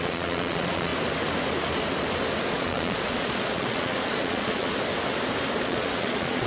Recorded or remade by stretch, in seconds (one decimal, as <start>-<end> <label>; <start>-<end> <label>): 0.0-0.9 remade; 0.9-2.5 recorded; 2.5-4.7 remade; 4.7-5.6 recorded; 5.6-6.5 remade